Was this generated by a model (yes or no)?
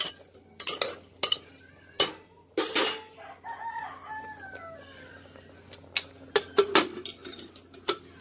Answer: no